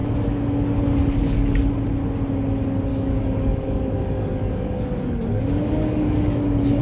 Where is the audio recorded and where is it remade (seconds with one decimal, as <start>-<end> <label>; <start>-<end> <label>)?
0.0-0.6 remade; 0.6-1.0 recorded; 1.0-1.7 remade; 1.7-2.9 recorded; 2.9-6.8 remade